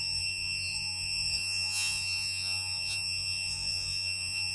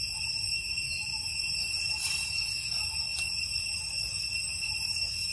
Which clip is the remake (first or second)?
first